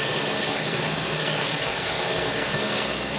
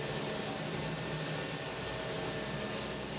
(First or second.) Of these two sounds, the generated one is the first